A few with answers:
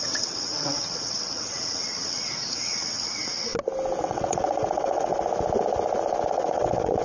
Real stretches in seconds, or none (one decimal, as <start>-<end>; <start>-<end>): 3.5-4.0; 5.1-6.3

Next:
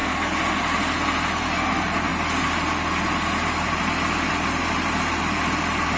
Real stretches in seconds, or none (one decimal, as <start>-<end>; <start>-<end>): 0.0-6.0

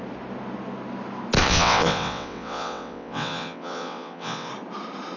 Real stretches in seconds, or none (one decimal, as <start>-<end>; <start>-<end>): 0.0-1.4; 4.5-5.2